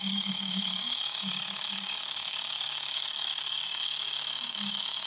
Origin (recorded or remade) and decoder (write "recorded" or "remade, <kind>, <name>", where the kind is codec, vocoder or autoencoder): remade, codec, DAC